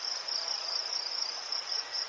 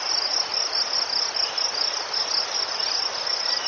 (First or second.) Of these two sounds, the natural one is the second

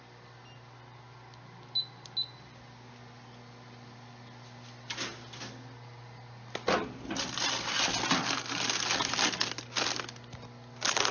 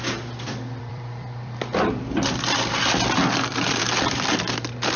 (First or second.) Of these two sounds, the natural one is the first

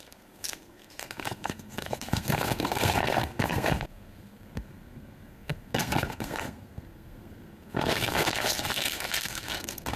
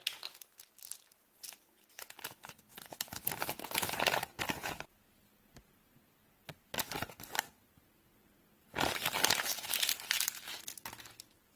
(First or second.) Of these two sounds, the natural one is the second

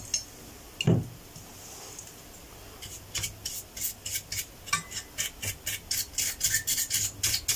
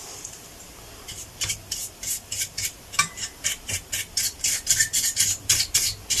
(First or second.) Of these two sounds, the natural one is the first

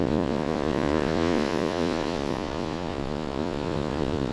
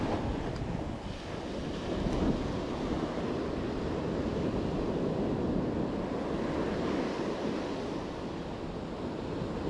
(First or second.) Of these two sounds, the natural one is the second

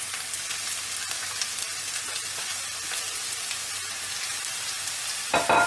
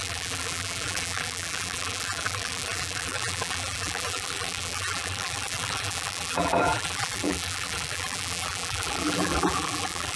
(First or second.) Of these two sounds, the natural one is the first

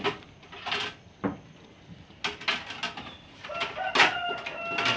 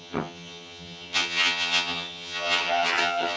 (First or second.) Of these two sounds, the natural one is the first